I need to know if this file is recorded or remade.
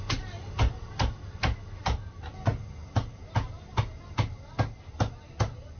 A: recorded